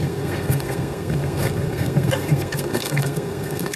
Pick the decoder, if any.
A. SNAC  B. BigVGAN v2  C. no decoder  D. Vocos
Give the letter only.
A